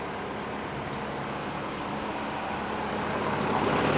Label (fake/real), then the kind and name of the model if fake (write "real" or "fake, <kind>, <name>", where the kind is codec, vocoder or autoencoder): real